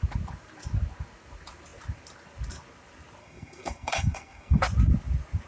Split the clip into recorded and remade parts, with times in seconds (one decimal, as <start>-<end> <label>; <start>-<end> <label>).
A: 0.0-3.2 recorded; 3.2-4.6 remade; 4.6-5.5 recorded